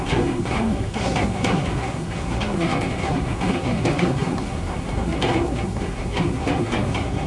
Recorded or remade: remade